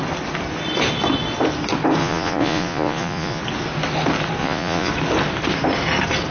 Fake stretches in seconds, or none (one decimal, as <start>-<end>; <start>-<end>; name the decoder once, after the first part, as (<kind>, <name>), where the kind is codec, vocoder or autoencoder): 2.0-3.4 (vocoder, Vocos); 4.4-4.9